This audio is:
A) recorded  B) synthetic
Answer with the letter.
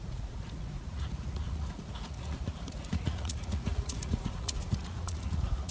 B